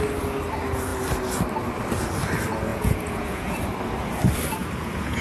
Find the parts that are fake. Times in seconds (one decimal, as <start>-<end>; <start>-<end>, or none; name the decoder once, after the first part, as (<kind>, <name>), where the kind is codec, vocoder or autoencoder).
2.7-3.6 (vocoder, Vocos); 4.6-5.2